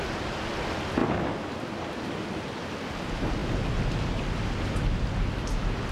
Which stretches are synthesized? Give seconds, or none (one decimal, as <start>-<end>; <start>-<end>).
none